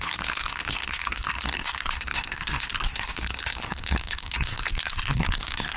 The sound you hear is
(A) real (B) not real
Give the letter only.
B